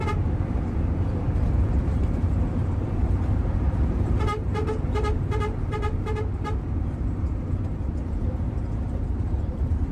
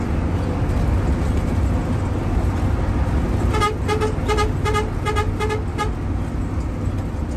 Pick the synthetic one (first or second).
first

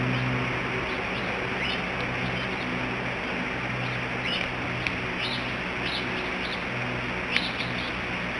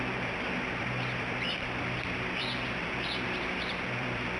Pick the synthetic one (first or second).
second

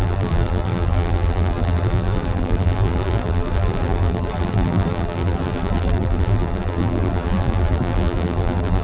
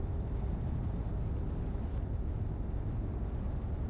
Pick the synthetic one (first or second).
first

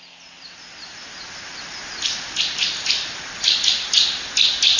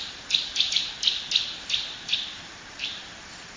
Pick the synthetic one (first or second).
second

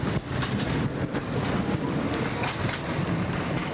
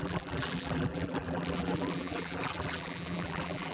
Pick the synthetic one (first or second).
second